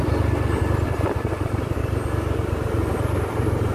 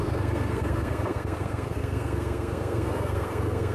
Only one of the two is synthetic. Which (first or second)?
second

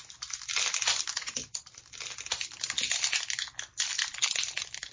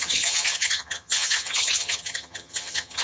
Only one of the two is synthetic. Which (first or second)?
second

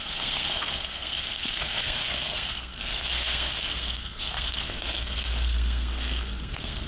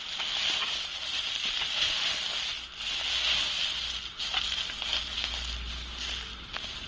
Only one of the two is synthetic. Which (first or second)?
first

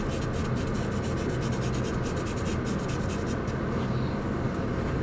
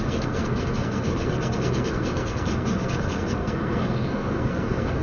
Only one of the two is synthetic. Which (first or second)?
second